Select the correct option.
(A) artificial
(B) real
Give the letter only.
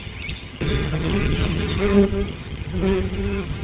A